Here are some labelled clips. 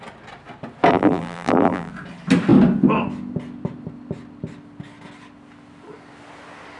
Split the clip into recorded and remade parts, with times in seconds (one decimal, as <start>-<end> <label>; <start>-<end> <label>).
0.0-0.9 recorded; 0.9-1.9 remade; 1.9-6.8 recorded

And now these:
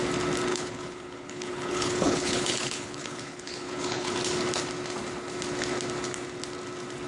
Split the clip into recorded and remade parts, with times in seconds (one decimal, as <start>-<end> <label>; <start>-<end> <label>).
0.0-0.5 recorded; 0.5-4.1 remade; 4.1-7.1 recorded

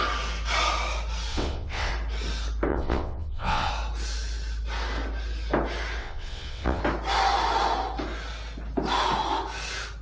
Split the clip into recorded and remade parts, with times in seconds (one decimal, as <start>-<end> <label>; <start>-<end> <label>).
0.0-1.3 recorded; 1.3-1.9 remade; 1.9-2.7 recorded; 2.7-3.7 remade; 3.7-6.0 recorded; 6.0-6.8 remade; 6.8-10.0 recorded

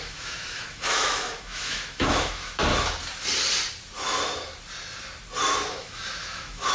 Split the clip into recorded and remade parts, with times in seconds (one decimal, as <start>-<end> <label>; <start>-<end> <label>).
0.0-2.7 remade; 2.7-5.7 recorded; 5.7-6.7 remade

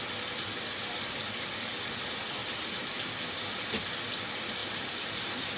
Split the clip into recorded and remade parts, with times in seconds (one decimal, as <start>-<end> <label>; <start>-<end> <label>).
0.0-2.4 recorded; 2.4-3.8 remade; 3.8-4.6 recorded; 4.6-5.6 remade

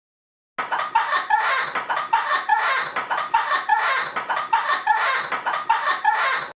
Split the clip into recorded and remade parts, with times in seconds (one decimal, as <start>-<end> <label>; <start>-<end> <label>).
0.0-6.6 recorded

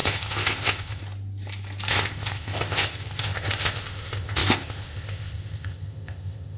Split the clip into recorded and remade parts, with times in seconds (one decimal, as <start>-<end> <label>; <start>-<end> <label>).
0.0-1.0 remade; 1.0-1.9 recorded; 1.9-6.6 remade